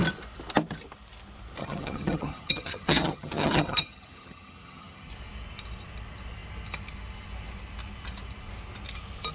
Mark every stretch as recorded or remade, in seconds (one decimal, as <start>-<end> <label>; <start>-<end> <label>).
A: 0.0-1.6 recorded; 1.6-5.1 remade; 5.1-9.3 recorded